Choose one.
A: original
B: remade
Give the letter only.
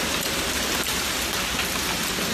A